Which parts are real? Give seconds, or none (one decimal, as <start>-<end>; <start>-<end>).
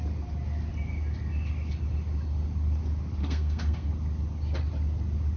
0.0-3.2; 3.9-5.4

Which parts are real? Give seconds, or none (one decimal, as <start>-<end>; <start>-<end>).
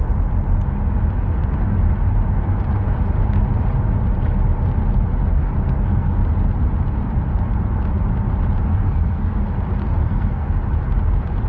0.0-5.2; 6.2-8.7; 9.4-9.8; 10.5-11.5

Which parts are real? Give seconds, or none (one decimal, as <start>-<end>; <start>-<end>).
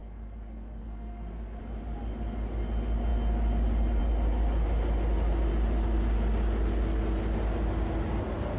1.6-8.6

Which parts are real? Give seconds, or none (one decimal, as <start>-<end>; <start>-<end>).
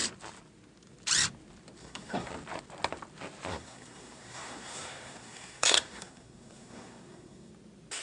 0.0-1.8; 2.3-3.5; 7.5-8.0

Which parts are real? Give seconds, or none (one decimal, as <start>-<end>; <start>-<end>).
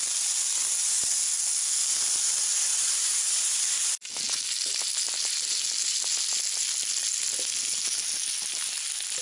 0.0-1.2; 1.9-9.2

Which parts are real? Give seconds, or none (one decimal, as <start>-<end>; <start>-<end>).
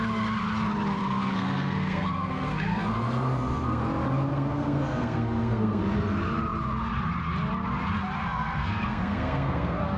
0.0-1.0; 3.8-4.3; 5.8-8.2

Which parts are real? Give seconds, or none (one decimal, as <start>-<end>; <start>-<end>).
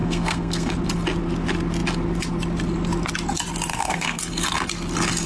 0.7-3.7; 4.2-5.3